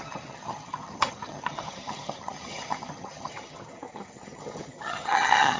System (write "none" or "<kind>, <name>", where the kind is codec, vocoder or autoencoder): vocoder, HiFi-GAN